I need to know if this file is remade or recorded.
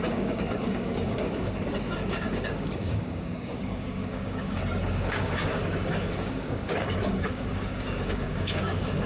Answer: remade